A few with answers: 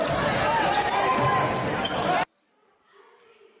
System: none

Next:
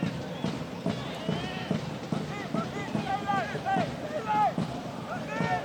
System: none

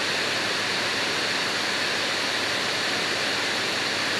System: none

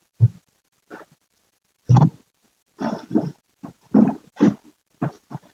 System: vocoder, BigVGAN v2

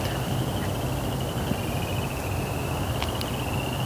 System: none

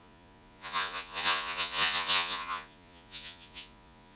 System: vocoder, Vocos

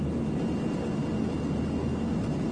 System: none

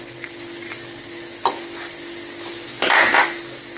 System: none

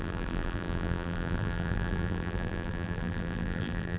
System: vocoder, BigVGAN v2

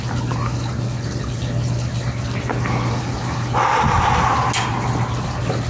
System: none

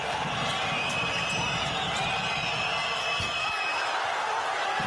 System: none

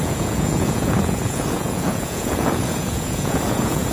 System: vocoder, Vocos